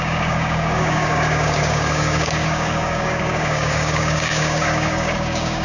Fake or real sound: fake